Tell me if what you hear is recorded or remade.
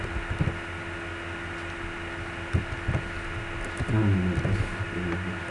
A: recorded